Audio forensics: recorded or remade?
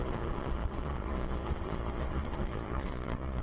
remade